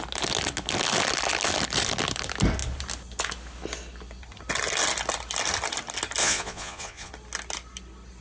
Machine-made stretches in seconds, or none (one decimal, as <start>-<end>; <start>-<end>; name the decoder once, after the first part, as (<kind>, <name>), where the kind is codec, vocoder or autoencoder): 6.2-7.1 (vocoder, Vocos)